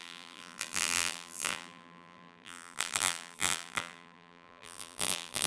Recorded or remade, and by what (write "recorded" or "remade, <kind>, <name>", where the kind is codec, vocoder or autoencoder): remade, vocoder, BigVGAN v2